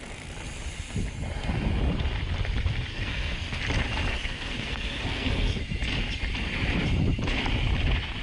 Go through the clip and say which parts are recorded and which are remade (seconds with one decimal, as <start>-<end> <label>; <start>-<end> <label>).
0.0-2.9 recorded; 2.9-3.6 remade; 3.6-4.1 recorded; 4.1-5.6 remade; 5.6-8.2 recorded